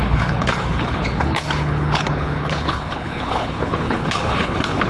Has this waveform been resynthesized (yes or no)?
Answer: yes